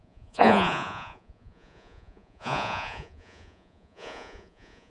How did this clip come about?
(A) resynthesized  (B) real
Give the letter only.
A